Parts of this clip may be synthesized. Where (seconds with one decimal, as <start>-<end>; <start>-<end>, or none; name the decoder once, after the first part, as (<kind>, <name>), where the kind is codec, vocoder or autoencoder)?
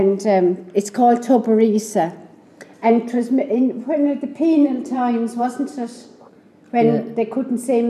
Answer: 2.2-3.6 (vocoder, BigVGAN v2); 4.3-6.5